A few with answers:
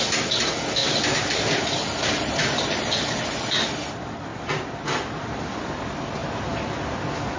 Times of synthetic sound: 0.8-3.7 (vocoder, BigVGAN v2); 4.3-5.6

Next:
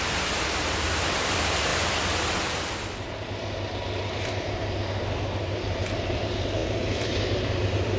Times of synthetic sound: 0.0-1.7 (vocoder, BigVGAN v2); 5.8-8.0

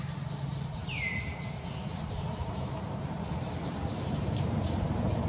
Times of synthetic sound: 0.0-5.3 (vocoder, BigVGAN v2)

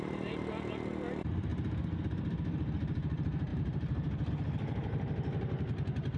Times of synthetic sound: 0.0-1.5 (vocoder, BigVGAN v2); 2.3-6.2

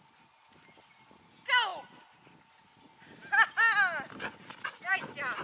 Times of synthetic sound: none

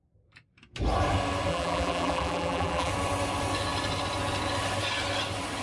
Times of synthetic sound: 1.5-2.9 (vocoder, BigVGAN v2)